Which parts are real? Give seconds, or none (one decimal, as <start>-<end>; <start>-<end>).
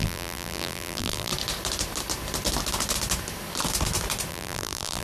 1.3-4.3